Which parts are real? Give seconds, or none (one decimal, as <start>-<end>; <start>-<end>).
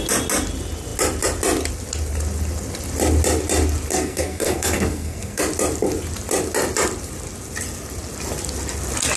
0.0-3.9; 5.4-9.2